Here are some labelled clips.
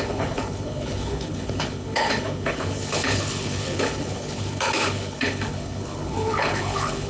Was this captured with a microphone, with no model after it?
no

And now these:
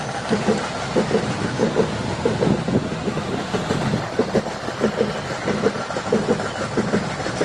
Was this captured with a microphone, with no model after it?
yes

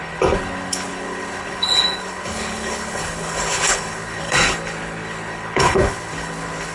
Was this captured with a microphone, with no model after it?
no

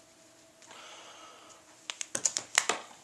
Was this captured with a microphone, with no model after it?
yes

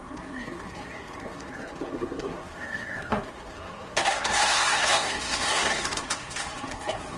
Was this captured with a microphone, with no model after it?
no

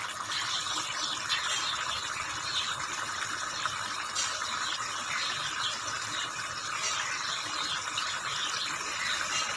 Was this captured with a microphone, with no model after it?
yes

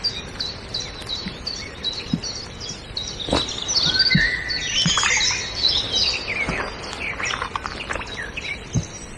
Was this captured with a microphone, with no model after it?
yes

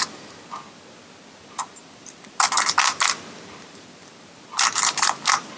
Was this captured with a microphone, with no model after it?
yes